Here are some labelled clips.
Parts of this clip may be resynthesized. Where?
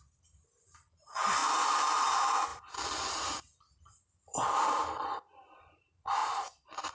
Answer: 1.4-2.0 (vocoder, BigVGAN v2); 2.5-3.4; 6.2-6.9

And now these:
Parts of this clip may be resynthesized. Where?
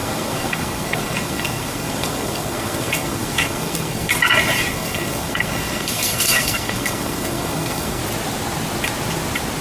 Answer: 0.0-4.1 (codec, SNAC); 4.7-8.0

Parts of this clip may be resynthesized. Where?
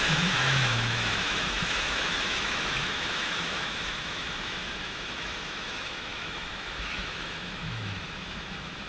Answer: 0.0-8.9 (autoencoder, DAC-VAE)